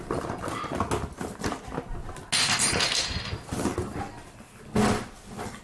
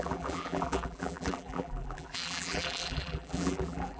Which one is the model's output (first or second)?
second